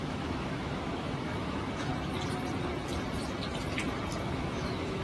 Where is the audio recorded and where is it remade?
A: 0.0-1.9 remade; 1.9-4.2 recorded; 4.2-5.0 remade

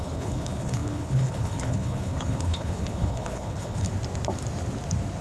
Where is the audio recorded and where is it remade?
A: 0.0-3.9 remade; 3.9-5.2 recorded